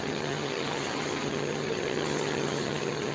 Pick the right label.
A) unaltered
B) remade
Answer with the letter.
B